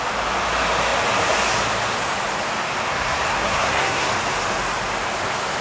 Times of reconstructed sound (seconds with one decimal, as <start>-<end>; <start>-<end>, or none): 2.9-4.1

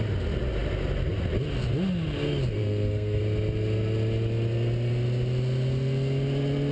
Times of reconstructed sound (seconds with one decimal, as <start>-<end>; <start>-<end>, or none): 2.6-3.2

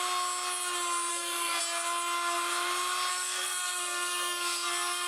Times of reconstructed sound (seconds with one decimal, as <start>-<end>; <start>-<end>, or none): 1.1-1.6; 3.1-5.1

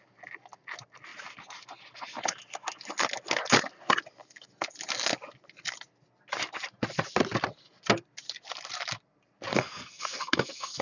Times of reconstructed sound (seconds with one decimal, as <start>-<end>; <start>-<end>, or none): 9.5-10.8

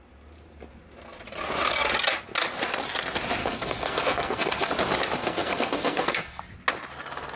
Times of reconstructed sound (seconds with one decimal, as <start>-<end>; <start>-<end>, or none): 3.4-4.7; 5.2-6.4

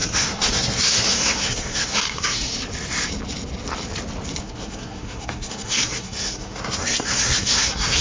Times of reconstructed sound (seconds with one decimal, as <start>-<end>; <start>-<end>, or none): 0.0-2.5; 4.4-8.0

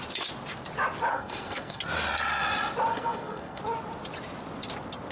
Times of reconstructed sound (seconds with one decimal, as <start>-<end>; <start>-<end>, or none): 1.1-1.8; 2.9-3.6

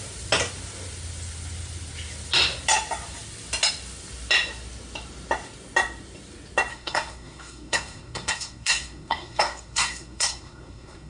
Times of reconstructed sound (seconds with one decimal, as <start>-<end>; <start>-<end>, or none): 6.7-11.1